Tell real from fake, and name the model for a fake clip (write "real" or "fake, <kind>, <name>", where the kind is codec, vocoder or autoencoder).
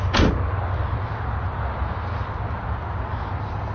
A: real